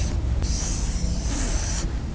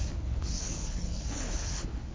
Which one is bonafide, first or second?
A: first